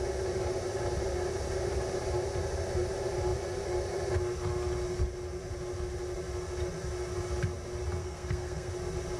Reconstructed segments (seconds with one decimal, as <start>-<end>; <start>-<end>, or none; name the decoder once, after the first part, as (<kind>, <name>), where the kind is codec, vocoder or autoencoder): 8.0-8.7 (codec, SNAC)